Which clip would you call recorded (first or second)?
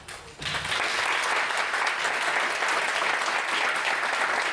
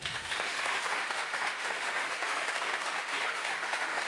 first